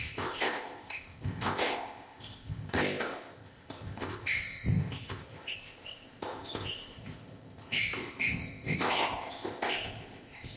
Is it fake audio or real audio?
fake